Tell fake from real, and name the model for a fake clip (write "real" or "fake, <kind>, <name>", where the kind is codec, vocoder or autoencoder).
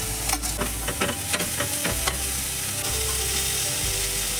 real